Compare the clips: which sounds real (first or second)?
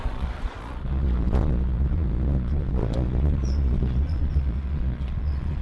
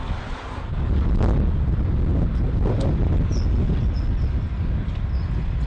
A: second